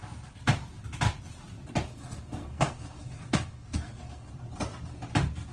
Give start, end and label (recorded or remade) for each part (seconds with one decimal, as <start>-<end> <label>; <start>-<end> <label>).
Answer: 0.0-1.9 recorded; 1.9-4.3 remade; 4.3-5.5 recorded